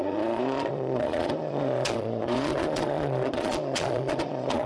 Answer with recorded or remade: remade